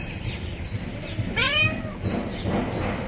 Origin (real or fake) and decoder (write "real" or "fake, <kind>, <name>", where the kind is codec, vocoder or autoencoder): real